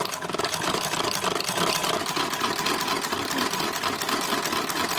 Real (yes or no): yes